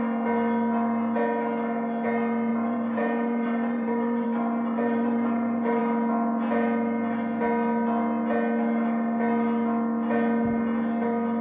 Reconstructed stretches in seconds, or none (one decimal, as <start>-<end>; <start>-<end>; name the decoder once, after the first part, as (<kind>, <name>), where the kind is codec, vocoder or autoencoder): 2.5-5.8 (vocoder, BigVGAN v2)